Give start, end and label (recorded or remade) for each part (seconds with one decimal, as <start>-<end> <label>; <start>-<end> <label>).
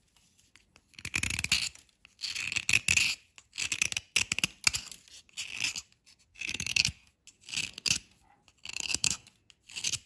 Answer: 0.0-6.3 recorded; 6.3-7.1 remade; 7.1-8.7 recorded; 8.7-9.3 remade; 9.3-10.1 recorded